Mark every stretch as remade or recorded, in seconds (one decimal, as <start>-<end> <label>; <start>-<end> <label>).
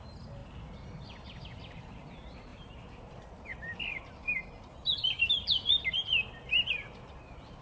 0.0-2.5 recorded; 2.5-3.0 remade; 3.0-7.6 recorded